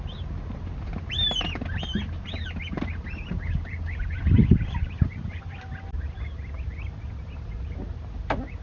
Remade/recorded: recorded